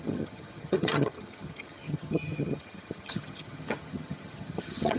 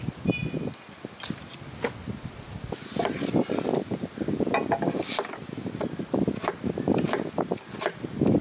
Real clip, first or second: second